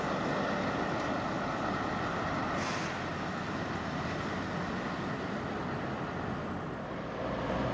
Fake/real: real